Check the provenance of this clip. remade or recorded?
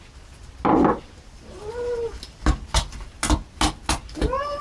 recorded